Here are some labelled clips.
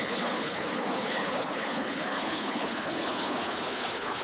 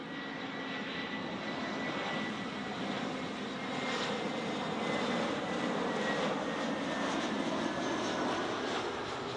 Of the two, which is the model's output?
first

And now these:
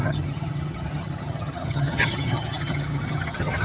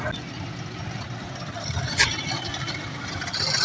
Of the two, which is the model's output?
first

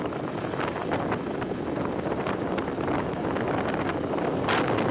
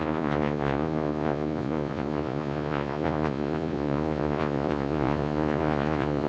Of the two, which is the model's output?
second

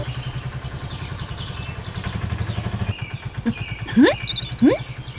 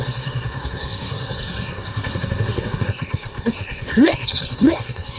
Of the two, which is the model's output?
second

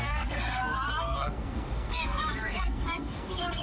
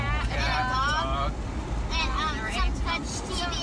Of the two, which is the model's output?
first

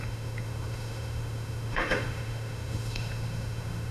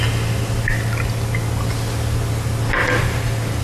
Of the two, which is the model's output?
first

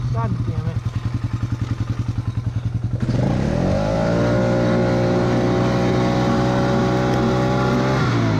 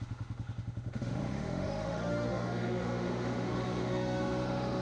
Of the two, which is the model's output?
second